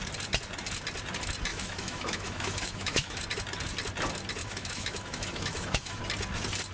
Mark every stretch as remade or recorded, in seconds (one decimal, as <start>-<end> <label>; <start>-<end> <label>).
0.0-1.5 recorded; 1.5-3.2 remade; 3.2-4.4 recorded; 4.4-6.0 remade; 6.0-6.7 recorded